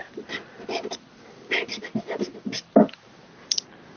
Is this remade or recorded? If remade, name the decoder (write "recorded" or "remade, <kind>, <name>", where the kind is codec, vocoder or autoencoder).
recorded